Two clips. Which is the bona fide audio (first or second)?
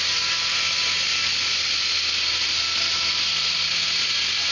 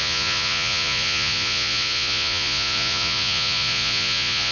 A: first